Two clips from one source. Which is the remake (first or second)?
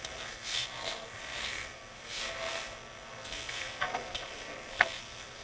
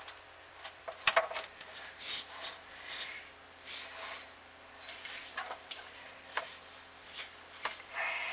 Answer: first